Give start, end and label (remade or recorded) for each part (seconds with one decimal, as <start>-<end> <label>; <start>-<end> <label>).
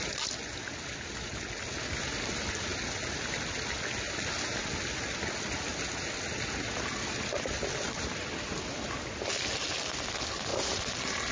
0.0-11.3 recorded